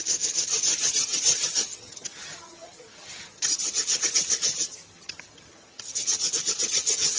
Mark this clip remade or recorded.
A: remade